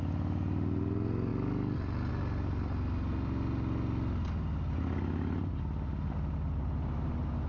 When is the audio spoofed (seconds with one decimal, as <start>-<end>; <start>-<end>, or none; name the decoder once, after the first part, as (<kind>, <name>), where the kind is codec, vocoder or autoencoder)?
none